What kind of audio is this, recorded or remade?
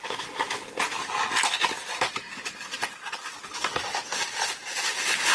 recorded